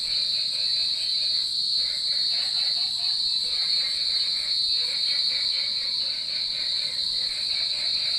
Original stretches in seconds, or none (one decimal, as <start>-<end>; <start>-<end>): 0.0-6.7